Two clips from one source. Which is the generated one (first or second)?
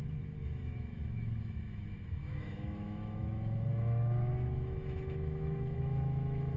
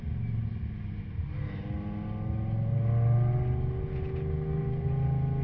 first